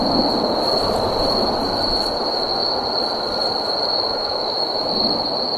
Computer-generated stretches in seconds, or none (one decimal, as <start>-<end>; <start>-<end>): 4.1-4.9